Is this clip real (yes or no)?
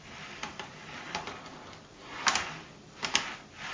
yes